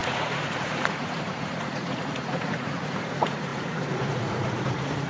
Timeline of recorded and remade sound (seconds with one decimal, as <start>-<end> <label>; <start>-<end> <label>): 0.0-5.1 remade